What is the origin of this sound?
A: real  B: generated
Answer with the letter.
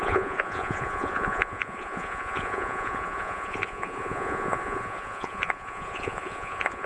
B